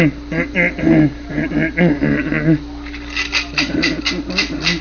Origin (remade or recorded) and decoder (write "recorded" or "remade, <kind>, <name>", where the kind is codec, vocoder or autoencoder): recorded